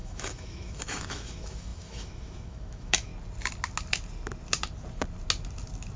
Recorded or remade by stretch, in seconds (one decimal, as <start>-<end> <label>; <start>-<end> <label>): 0.0-3.1 remade; 3.1-6.0 recorded